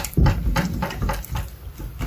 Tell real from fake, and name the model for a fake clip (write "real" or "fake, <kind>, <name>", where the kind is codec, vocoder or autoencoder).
fake, vocoder, BigVGAN v2